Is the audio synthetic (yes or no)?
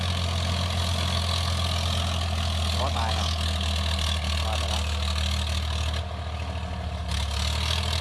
no